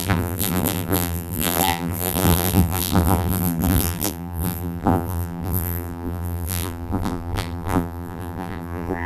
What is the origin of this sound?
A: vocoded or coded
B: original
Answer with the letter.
A